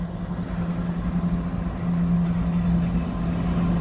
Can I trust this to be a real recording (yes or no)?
yes